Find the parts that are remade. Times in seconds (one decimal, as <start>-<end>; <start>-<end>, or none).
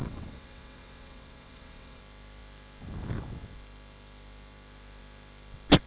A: 0.0-2.0